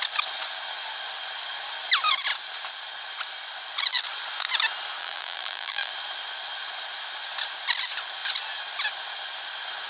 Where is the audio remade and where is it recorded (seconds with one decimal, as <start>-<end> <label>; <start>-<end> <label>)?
0.0-5.0 recorded; 5.0-5.9 remade; 5.9-9.9 recorded